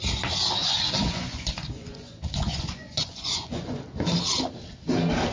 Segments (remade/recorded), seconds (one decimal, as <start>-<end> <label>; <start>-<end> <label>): 0.0-0.6 recorded; 0.6-3.8 remade; 3.8-5.3 recorded